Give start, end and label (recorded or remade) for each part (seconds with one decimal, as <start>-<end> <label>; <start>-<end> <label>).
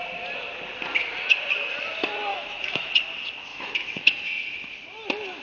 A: 0.0-2.3 recorded; 2.3-2.9 remade; 2.9-3.5 recorded; 3.5-4.7 remade; 4.7-5.4 recorded